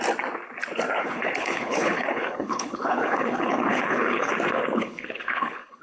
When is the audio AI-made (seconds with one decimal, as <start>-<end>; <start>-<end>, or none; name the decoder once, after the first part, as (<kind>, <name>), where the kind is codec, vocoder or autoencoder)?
1.0-4.3 (codec, HILCodec); 4.8-5.8